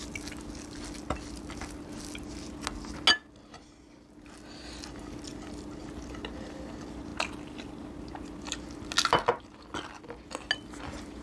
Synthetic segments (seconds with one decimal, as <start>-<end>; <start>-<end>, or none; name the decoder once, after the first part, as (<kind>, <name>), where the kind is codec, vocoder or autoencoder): none